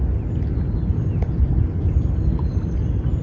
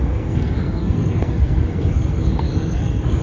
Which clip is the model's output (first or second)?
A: second